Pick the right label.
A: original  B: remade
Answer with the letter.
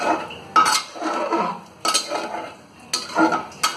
A